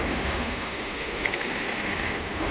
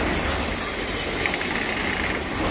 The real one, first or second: second